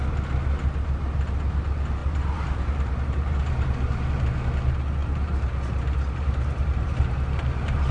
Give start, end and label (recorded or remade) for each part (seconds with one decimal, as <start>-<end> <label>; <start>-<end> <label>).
0.0-2.0 recorded; 2.0-4.5 remade; 4.5-5.0 recorded; 5.0-7.9 remade